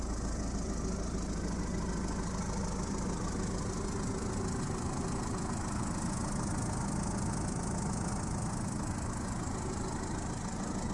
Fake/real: real